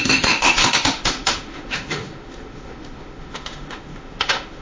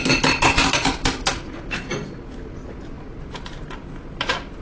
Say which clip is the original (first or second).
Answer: second